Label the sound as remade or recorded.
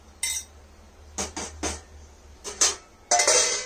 recorded